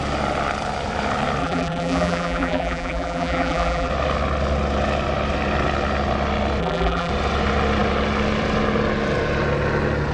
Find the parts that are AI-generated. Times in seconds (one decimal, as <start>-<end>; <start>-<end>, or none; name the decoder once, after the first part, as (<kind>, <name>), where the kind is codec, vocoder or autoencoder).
1.4-3.9 (vocoder, BigVGAN v2); 6.6-7.1